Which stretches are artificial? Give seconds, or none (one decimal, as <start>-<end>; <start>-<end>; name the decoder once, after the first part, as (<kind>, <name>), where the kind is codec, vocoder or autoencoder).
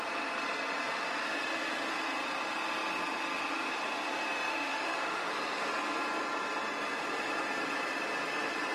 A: 4.5-5.3 (autoencoder, DAC-VAE)